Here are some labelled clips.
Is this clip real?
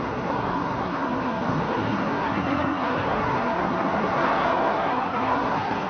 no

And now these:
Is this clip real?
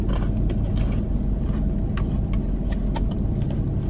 yes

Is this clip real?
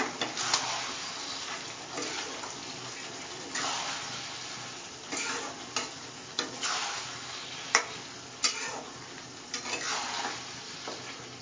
yes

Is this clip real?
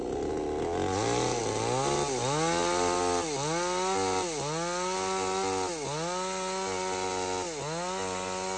yes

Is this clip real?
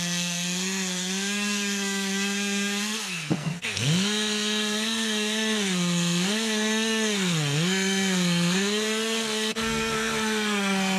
no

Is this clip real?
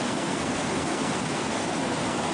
no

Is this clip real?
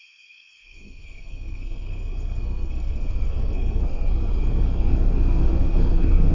no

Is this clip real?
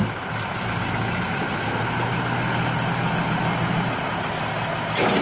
yes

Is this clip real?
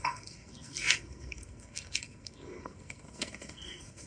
no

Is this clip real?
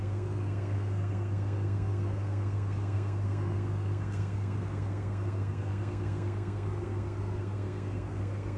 no